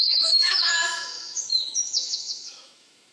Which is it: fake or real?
fake